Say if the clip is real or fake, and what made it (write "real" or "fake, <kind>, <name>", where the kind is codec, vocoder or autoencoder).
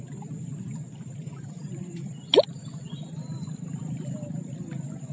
real